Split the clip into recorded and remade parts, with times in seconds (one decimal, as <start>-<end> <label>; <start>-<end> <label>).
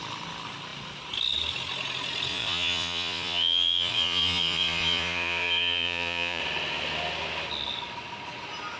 0.0-2.3 recorded; 2.3-6.4 remade; 6.4-8.8 recorded